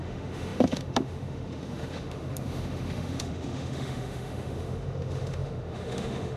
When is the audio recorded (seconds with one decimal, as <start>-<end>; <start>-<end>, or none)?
none